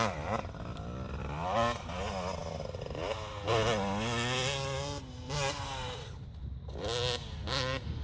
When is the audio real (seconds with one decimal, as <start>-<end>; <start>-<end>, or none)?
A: 0.0-8.0